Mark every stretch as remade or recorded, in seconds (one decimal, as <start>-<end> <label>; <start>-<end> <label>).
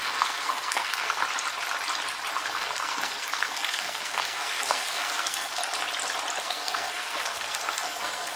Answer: 0.0-1.2 remade; 1.2-2.4 recorded; 2.4-5.6 remade; 5.6-6.4 recorded; 6.4-8.4 remade